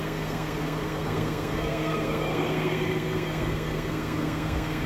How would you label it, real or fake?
fake